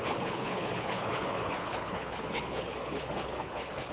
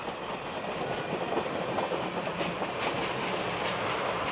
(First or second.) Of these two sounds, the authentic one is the second